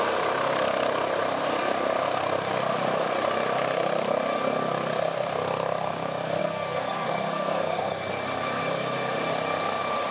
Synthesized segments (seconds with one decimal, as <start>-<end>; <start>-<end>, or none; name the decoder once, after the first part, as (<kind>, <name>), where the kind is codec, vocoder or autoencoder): 6.4-8.1 (codec, SNAC)